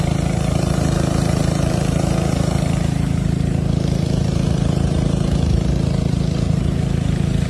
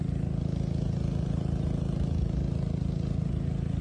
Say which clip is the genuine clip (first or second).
second